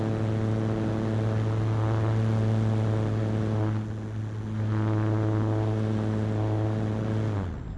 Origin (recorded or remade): recorded